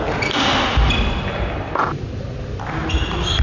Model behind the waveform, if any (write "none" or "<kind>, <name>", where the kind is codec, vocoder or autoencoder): none